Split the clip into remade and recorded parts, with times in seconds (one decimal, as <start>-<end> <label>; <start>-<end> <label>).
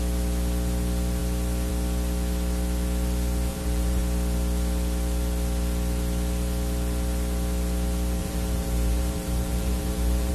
0.0-3.5 recorded; 3.5-4.0 remade; 4.0-8.2 recorded; 8.2-10.3 remade